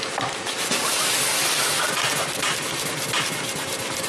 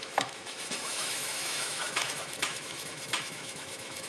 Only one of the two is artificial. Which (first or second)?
second